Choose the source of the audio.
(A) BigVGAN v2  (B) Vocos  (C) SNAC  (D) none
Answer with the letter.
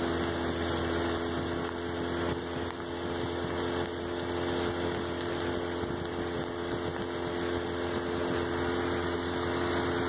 D